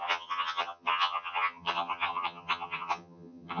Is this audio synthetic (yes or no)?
yes